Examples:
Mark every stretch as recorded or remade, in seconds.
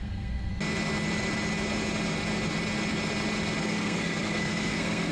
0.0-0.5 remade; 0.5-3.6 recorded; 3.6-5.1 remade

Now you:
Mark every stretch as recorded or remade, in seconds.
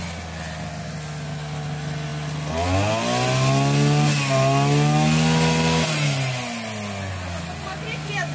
0.0-8.3 recorded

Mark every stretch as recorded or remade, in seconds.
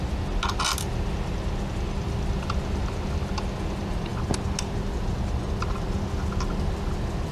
0.0-7.3 recorded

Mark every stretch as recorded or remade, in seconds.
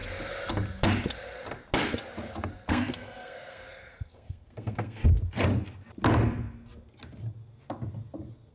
0.0-2.7 recorded; 2.7-5.0 remade; 5.0-8.5 recorded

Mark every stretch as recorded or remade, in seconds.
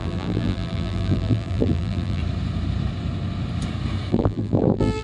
0.0-2.2 remade; 2.2-4.1 recorded; 4.1-5.0 remade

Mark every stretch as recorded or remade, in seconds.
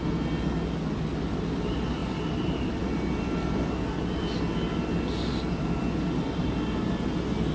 0.0-7.5 recorded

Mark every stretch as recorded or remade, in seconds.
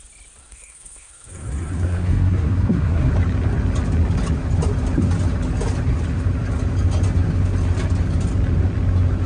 0.0-0.4 recorded; 0.4-3.1 remade; 3.1-9.3 recorded